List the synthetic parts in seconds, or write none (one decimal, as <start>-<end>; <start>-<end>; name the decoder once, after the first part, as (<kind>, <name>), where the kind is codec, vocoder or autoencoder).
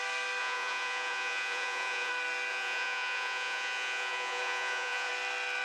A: 0.4-2.1 (vocoder, Vocos); 2.5-5.1